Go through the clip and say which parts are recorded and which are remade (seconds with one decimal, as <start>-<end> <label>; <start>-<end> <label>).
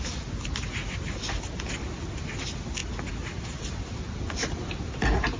0.0-5.4 recorded